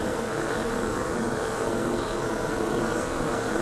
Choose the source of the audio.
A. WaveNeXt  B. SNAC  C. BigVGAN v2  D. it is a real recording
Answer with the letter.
B